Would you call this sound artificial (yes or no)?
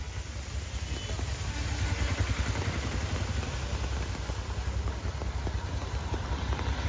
no